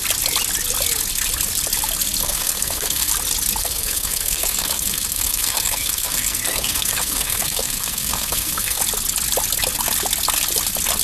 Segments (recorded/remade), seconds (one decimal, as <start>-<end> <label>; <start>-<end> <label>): 0.0-2.2 recorded; 2.2-3.1 remade; 3.1-3.6 recorded; 3.6-8.8 remade; 8.8-11.0 recorded